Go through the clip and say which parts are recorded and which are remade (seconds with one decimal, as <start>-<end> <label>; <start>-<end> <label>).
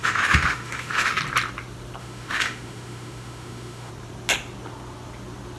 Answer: 0.0-1.2 remade; 1.2-2.0 recorded; 2.0-3.9 remade; 3.9-5.6 recorded